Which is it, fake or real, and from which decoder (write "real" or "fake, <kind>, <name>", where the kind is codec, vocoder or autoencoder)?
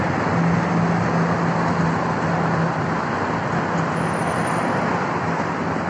real